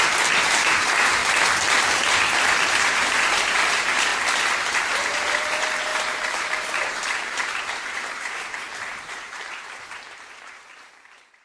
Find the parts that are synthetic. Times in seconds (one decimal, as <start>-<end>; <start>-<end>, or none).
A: 0.0-1.2; 3.0-4.1; 4.7-11.4